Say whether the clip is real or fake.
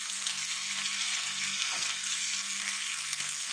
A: fake